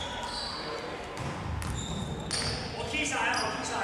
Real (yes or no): yes